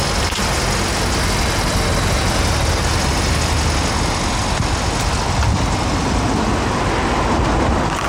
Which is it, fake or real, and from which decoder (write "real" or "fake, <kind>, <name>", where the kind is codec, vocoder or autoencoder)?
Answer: real